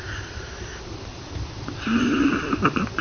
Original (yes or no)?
no